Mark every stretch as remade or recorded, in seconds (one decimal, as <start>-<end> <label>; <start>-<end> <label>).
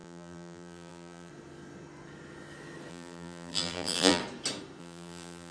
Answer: 0.0-1.3 remade; 1.3-2.9 recorded; 2.9-4.2 remade; 4.2-4.8 recorded; 4.8-5.5 remade